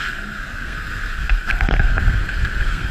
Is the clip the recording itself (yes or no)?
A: no